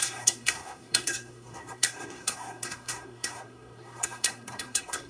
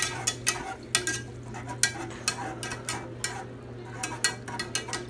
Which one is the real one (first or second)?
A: second